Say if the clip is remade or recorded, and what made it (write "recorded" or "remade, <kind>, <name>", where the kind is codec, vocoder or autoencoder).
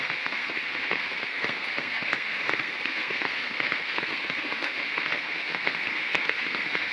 remade, codec, SNAC